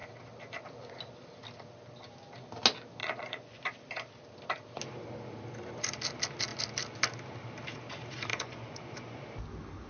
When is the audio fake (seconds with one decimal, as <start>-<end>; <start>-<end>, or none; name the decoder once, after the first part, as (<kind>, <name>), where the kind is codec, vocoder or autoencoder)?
3.0-3.6 (vocoder, Vocos); 8.3-9.2